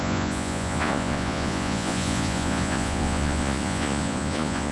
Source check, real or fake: fake